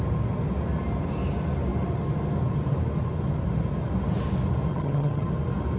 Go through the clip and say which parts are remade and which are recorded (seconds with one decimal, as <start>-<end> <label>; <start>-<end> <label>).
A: 0.0-4.7 recorded; 4.7-5.3 remade; 5.3-5.8 recorded